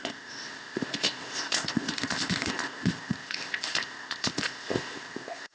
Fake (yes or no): yes